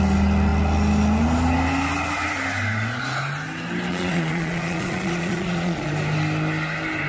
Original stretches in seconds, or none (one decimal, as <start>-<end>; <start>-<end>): 0.0-3.9; 5.9-7.1